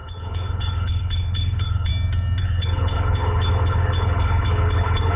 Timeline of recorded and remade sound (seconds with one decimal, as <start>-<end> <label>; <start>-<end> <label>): 0.0-1.9 remade; 1.9-2.4 recorded; 2.4-5.2 remade